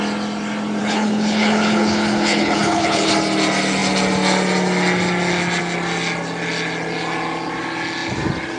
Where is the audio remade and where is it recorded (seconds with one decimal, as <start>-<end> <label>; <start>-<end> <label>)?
0.0-0.8 recorded; 0.8-3.1 remade; 3.1-8.6 recorded

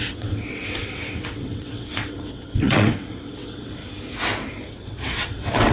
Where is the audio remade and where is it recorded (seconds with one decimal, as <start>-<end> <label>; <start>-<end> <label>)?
0.0-3.8 remade; 3.8-4.7 recorded; 4.7-5.7 remade

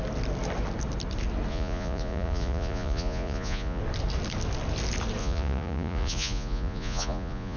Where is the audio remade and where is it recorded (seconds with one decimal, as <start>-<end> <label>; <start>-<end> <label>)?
0.0-1.5 recorded; 1.5-3.8 remade; 3.8-5.2 recorded; 5.2-7.6 remade

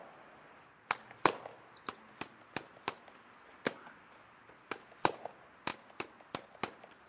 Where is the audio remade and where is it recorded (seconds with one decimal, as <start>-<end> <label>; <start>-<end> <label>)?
0.0-7.1 recorded

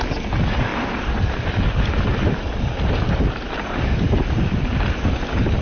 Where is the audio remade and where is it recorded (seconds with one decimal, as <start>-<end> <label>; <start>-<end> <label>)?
0.0-0.7 recorded; 0.7-4.1 remade; 4.1-5.6 recorded

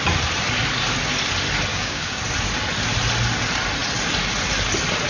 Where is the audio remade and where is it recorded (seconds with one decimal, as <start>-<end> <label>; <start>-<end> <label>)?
0.0-1.7 recorded; 1.7-2.2 remade; 2.2-5.1 recorded

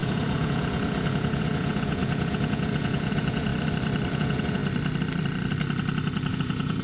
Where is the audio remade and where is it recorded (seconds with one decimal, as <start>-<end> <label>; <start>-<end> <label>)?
0.0-3.5 remade; 3.5-4.1 recorded; 4.1-4.6 remade; 4.6-6.3 recorded; 6.3-6.8 remade

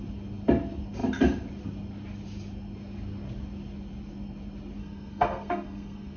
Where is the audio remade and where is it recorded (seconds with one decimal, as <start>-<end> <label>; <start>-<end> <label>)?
0.0-4.8 recorded; 4.8-6.2 remade